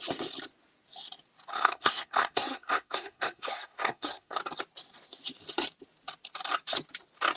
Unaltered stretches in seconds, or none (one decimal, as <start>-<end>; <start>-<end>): 0.0-1.5; 4.4-7.4